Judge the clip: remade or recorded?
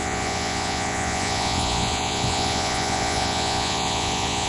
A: remade